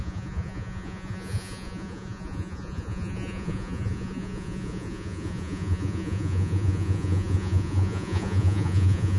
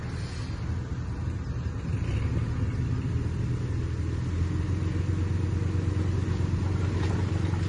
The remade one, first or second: first